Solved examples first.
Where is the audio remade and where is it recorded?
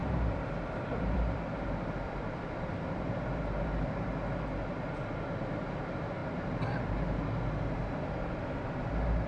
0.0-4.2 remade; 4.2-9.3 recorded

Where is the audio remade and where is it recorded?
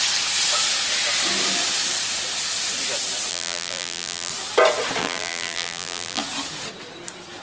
0.0-3.3 recorded; 3.3-4.3 remade; 4.3-5.0 recorded; 5.0-6.2 remade; 6.2-7.4 recorded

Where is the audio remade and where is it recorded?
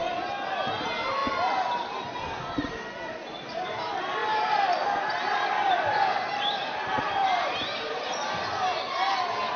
0.0-4.2 recorded; 4.2-8.3 remade; 8.3-9.6 recorded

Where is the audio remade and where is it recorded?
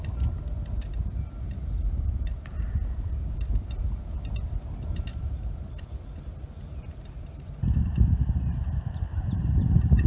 0.0-5.1 recorded; 5.1-8.4 remade; 8.4-10.1 recorded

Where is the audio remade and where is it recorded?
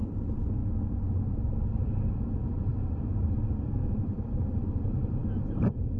0.0-0.6 remade; 0.6-1.3 recorded; 1.3-6.0 remade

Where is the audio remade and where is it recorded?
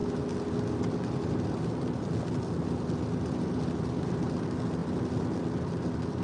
0.0-4.8 recorded; 4.8-5.4 remade; 5.4-6.2 recorded